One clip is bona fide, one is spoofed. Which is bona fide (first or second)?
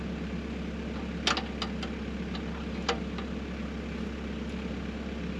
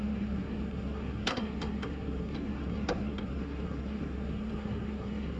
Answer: first